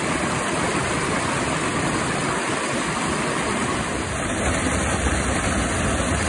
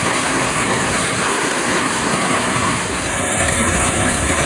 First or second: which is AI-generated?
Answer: second